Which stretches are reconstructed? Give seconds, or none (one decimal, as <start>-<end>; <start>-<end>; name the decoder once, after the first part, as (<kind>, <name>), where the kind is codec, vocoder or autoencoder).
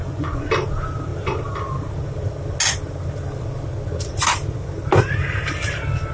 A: 0.0-0.5 (vocoder, Vocos)